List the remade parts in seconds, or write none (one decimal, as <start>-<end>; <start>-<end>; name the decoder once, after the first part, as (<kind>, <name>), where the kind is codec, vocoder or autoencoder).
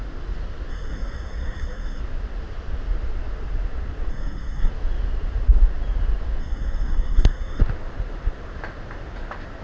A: 0.7-2.0 (codec, SNAC); 4.1-4.7; 6.4-7.6